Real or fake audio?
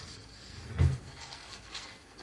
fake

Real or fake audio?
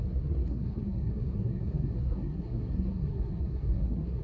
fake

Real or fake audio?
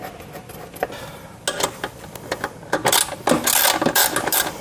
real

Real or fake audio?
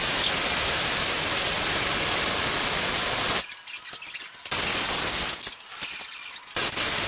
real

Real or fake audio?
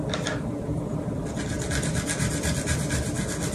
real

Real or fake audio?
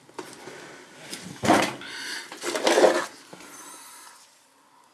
real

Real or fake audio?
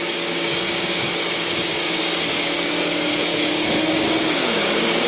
fake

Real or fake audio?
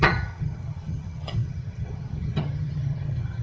fake